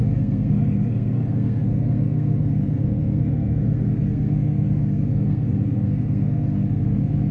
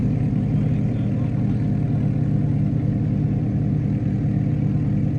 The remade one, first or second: first